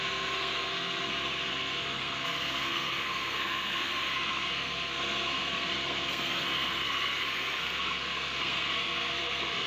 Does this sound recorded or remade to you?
remade